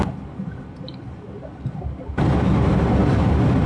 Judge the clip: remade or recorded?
recorded